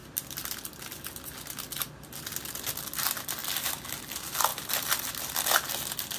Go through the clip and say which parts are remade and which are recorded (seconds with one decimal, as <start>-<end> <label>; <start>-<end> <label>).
0.0-0.7 remade; 0.7-4.5 recorded; 4.5-5.1 remade; 5.1-6.2 recorded